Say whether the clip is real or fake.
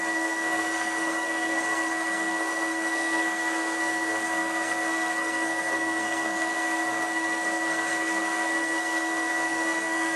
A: fake